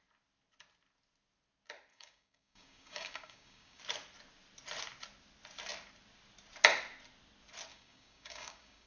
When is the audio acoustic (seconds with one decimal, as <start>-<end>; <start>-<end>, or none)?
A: 0.0-1.9; 3.8-7.7